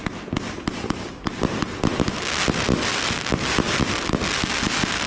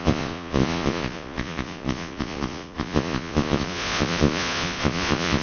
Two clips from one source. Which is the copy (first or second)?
second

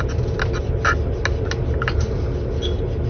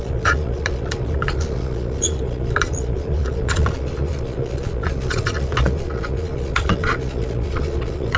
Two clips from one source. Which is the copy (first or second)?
second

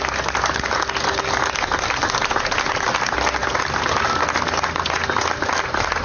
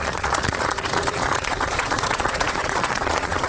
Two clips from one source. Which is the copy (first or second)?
second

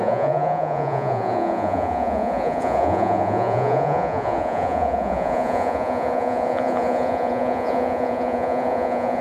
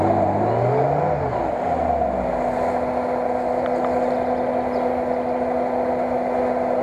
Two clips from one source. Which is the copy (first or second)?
first